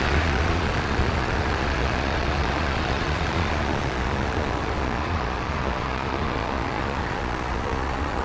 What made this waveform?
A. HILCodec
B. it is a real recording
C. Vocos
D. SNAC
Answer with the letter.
C